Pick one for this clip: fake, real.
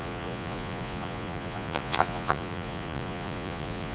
fake